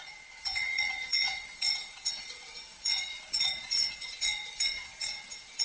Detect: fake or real fake